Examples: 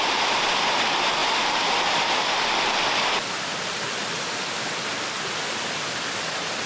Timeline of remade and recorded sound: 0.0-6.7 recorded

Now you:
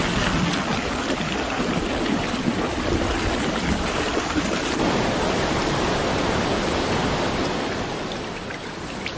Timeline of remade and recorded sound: 0.0-0.7 recorded; 0.7-9.2 remade

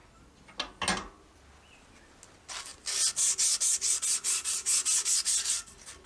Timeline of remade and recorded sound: 0.0-6.1 recorded

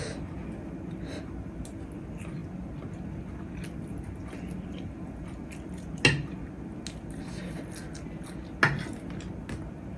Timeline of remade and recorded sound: 0.0-10.0 recorded